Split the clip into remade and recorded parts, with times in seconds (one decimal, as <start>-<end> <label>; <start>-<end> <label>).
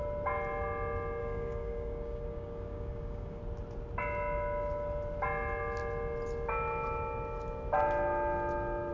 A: 0.0-1.2 recorded; 1.2-3.4 remade; 3.4-8.9 recorded